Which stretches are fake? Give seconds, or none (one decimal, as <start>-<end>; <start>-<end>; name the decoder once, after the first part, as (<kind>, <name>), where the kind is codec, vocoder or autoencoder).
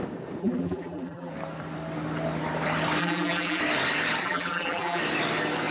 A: 0.4-1.3 (vocoder, BigVGAN v2); 3.0-3.6; 4.2-5.0